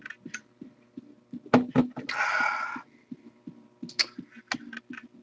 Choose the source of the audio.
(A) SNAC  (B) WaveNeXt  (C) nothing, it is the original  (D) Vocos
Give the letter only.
C